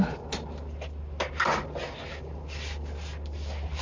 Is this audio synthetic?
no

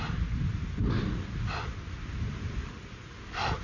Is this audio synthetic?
no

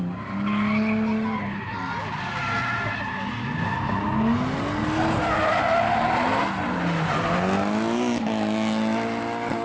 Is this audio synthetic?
no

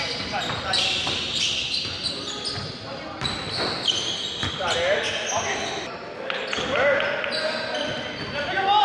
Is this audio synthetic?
no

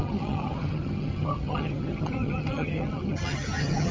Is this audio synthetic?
yes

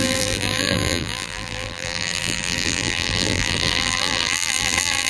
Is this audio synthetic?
yes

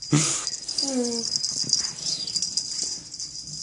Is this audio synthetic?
no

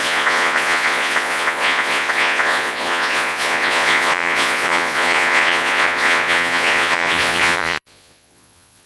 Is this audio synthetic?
yes